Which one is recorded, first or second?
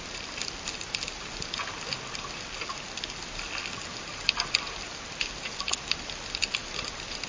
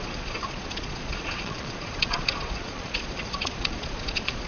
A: first